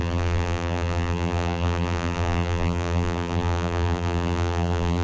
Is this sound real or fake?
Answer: fake